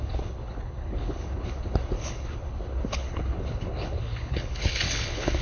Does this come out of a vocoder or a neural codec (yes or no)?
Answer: yes